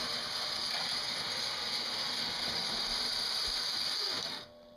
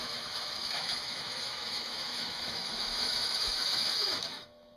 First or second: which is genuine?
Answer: first